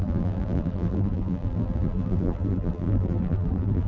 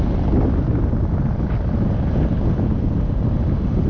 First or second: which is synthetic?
first